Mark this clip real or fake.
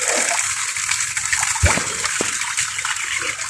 real